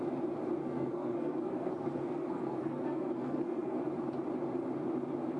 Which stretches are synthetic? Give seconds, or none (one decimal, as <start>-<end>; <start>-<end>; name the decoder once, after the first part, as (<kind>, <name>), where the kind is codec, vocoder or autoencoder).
0.6-3.8 (codec, SNAC)